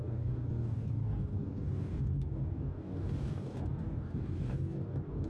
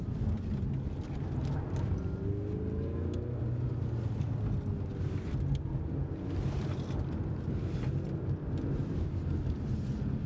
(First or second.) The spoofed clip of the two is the first